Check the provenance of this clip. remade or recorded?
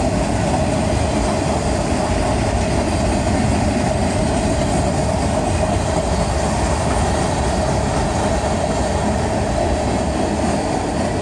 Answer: recorded